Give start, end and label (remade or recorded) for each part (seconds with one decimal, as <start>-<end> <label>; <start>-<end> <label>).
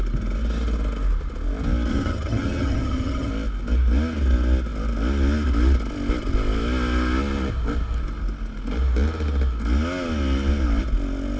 0.0-1.9 recorded; 1.9-3.3 remade; 3.3-11.4 recorded